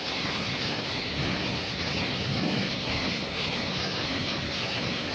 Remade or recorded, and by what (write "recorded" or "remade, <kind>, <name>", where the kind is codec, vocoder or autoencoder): remade, codec, SNAC